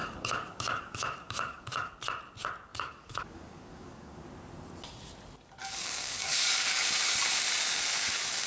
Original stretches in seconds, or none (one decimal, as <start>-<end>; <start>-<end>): 1.9-2.7; 4.2-5.6; 6.8-7.6